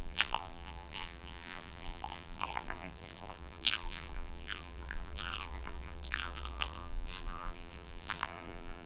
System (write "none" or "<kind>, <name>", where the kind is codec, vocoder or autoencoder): vocoder, BigVGAN v2